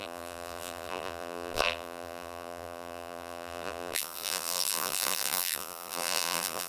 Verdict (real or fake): fake